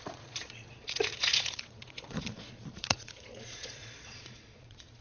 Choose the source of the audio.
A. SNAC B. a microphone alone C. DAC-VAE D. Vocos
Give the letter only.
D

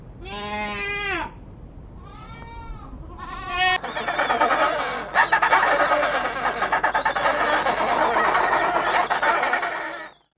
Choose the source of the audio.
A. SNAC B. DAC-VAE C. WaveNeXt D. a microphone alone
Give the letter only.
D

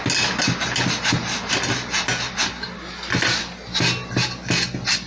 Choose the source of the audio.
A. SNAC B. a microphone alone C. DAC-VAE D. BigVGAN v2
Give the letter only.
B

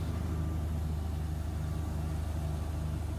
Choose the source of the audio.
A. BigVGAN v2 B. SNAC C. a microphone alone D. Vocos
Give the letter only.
C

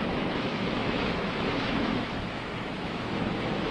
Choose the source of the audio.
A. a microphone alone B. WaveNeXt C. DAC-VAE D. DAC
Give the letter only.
C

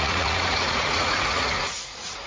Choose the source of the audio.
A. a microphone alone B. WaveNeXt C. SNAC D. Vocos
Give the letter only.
D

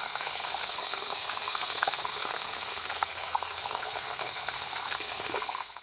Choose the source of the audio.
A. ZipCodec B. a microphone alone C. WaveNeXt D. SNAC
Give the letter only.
D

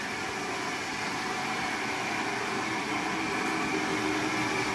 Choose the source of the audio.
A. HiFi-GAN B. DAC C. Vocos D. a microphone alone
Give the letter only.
D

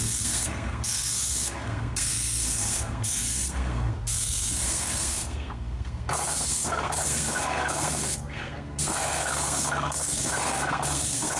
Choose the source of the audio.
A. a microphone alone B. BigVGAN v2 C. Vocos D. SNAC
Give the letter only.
D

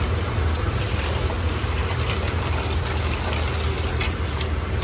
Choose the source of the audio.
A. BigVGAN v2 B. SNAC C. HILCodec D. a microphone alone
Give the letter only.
A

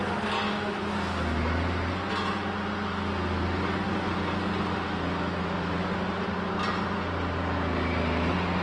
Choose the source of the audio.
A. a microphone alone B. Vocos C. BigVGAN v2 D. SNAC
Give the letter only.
A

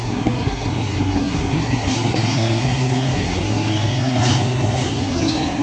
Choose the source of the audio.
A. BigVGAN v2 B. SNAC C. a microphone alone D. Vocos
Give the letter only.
B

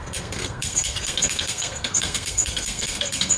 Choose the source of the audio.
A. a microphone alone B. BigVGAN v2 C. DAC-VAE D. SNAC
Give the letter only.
D